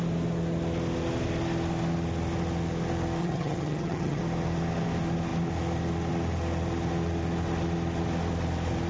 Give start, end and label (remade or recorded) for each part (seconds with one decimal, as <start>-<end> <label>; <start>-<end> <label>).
0.0-3.2 recorded; 3.2-4.2 remade; 4.2-8.9 recorded